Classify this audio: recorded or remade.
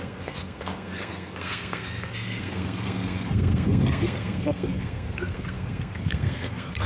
remade